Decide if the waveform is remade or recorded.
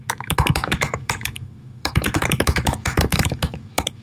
remade